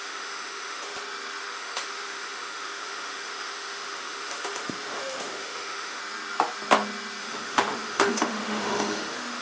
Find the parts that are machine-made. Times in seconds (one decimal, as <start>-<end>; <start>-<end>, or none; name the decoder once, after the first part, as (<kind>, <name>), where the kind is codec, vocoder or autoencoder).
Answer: 0.0-0.9 (autoencoder, DAC-VAE); 1.4-6.0; 7.2-9.4